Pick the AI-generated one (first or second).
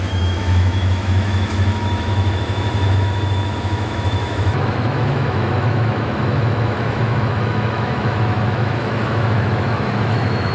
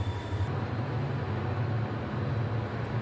first